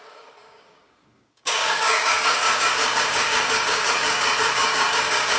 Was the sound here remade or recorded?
remade